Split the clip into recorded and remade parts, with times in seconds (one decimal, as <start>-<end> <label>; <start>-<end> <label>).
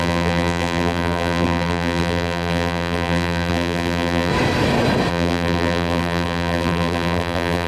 0.0-4.3 remade; 4.3-5.1 recorded; 5.1-7.7 remade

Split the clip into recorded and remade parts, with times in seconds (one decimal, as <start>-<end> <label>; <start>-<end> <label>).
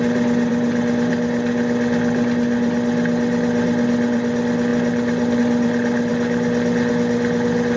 0.0-7.8 recorded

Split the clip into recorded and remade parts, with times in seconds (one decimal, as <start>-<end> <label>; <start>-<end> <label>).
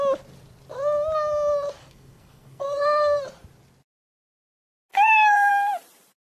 0.0-1.8 recorded; 1.8-3.2 remade; 3.2-4.9 recorded; 4.9-5.5 remade; 5.5-6.4 recorded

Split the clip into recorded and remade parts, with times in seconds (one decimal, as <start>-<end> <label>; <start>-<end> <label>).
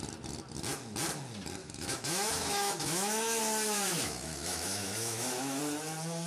0.0-1.6 recorded; 1.6-3.4 remade; 3.4-3.9 recorded; 3.9-5.6 remade; 5.6-6.3 recorded